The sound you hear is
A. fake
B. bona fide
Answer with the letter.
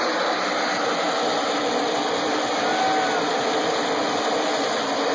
B